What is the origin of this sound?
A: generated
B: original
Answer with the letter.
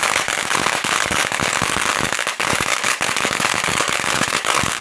A